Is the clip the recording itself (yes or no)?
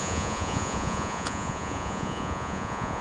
no